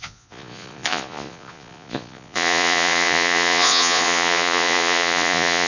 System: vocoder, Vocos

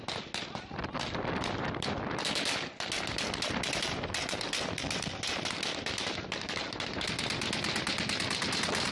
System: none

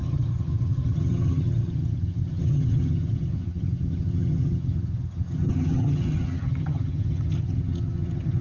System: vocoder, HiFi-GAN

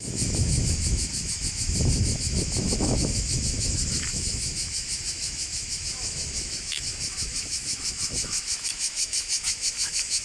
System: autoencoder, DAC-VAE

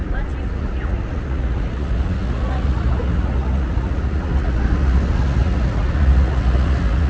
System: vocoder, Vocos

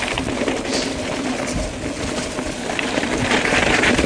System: none